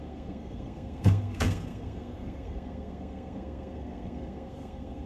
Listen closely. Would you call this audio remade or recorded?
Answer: remade